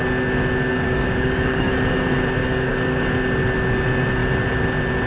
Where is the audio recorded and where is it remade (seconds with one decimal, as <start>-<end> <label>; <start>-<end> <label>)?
0.0-0.7 recorded; 0.7-1.7 remade; 1.7-2.4 recorded; 2.4-3.0 remade; 3.0-5.1 recorded